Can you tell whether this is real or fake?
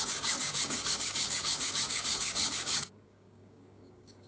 fake